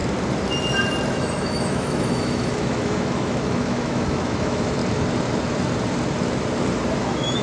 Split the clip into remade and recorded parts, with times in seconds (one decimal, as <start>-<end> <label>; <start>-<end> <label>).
0.0-1.1 recorded; 1.1-4.8 remade; 4.8-7.0 recorded; 7.0-7.4 remade